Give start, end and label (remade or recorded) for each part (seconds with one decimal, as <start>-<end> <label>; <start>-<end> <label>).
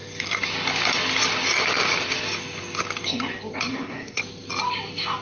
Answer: 0.0-3.7 recorded; 3.7-4.2 remade; 4.2-5.2 recorded